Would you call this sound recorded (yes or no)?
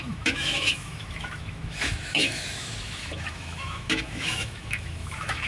no